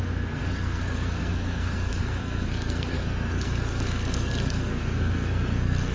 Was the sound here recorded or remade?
remade